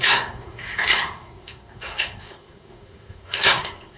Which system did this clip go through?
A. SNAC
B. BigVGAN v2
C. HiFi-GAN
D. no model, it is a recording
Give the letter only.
A